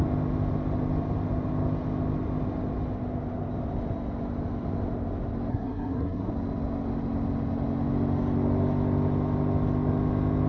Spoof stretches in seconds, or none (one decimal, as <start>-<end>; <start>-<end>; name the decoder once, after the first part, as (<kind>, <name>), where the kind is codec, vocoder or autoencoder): 5.5-6.3 (codec, SNAC)